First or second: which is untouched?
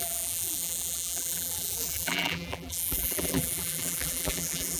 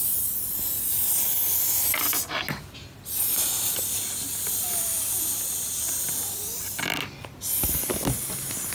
second